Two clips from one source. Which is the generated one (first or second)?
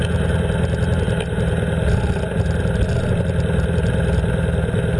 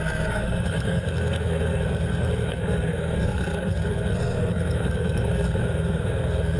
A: second